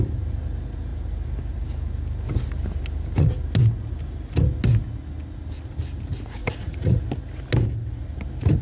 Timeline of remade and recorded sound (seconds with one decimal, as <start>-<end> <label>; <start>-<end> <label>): 0.0-6.4 recorded; 6.4-7.0 remade; 7.0-8.6 recorded